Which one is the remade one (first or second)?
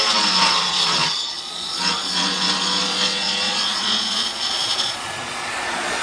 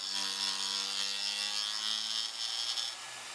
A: first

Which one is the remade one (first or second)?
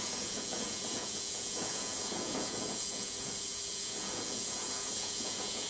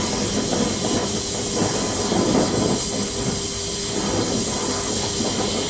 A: first